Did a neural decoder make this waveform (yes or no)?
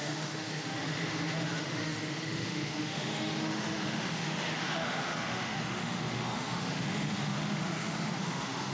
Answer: yes